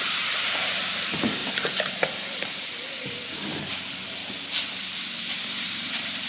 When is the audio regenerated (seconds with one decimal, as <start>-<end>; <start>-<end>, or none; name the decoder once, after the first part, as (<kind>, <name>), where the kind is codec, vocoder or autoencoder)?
0.0-1.4 (vocoder, BigVGAN v2); 5.2-6.3